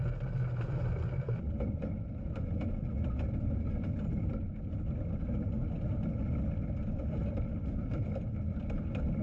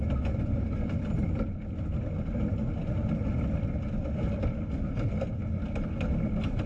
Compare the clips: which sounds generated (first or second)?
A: first